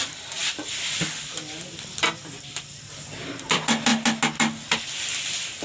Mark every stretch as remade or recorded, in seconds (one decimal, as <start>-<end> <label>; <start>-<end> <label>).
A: 0.0-3.9 remade; 3.9-4.7 recorded; 4.7-5.6 remade